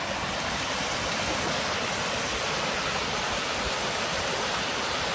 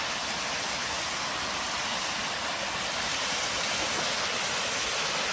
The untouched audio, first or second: second